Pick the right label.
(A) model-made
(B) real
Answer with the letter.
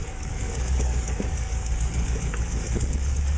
A